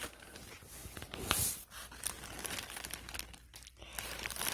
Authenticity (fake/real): real